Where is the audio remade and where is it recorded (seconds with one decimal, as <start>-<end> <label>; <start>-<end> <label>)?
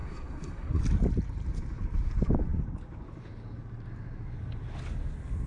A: 0.0-0.8 remade; 0.8-5.5 recorded